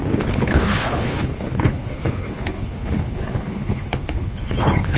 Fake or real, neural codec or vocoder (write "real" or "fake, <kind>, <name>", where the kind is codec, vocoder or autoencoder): fake, codec, HILCodec